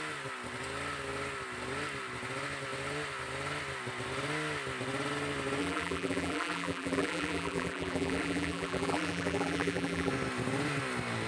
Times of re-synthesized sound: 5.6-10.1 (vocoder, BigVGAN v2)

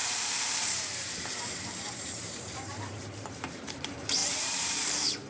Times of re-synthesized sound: 0.0-5.3 (vocoder, BigVGAN v2)

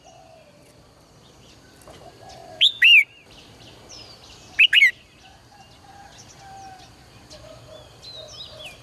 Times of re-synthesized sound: none

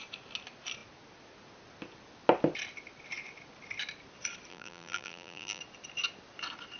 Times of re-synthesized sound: 4.5-5.6 (vocoder, BigVGAN v2)

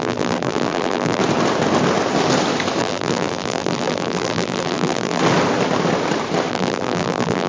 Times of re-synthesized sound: 0.0-1.2 (vocoder, BigVGAN v2); 2.8-5.2; 6.5-7.5

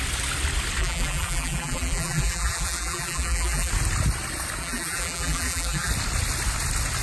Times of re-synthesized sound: 0.8-3.7 (vocoder, BigVGAN v2); 4.6-5.9

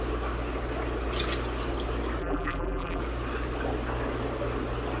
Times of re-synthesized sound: 2.2-3.0 (vocoder, BigVGAN v2)